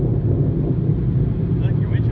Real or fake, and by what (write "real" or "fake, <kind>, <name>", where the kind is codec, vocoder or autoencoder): real